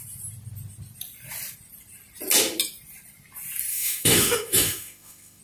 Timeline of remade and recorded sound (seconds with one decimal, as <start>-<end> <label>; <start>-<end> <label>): 0.0-3.7 recorded; 3.7-5.4 remade